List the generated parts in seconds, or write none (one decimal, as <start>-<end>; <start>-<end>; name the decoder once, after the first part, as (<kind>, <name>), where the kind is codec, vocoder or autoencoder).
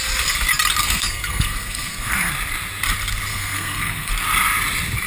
0.8-2.3 (codec, SNAC); 3.3-4.1